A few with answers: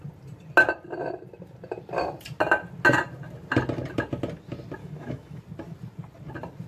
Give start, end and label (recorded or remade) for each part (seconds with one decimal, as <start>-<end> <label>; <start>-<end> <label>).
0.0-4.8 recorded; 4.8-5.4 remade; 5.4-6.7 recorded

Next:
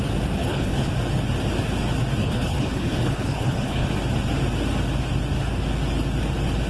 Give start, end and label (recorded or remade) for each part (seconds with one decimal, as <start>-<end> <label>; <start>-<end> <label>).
0.0-0.4 recorded; 0.4-0.9 remade; 0.9-2.2 recorded; 2.2-3.9 remade; 3.9-6.7 recorded

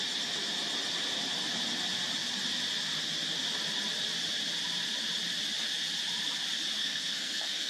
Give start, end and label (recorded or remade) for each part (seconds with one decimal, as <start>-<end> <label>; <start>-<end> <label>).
0.0-6.8 recorded; 6.8-7.7 remade

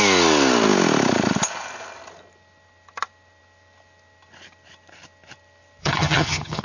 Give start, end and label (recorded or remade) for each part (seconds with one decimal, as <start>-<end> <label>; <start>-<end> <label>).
0.0-5.8 recorded; 5.8-6.6 remade